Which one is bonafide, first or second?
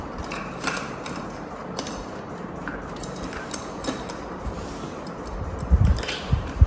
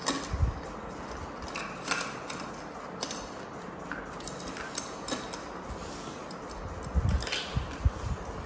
second